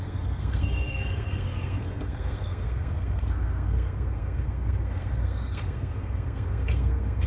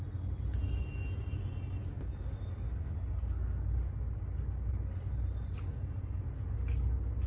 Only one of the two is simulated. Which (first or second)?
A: first